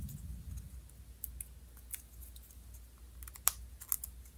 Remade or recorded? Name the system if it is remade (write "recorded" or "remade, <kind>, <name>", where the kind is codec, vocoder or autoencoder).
recorded